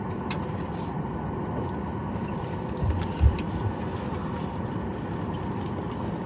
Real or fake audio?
real